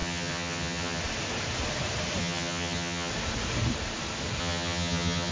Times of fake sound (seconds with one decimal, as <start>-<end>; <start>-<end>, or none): 0.0-1.0; 2.2-3.1; 4.4-5.3